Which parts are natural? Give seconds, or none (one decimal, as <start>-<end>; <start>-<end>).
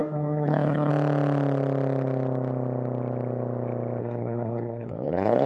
0.9-4.0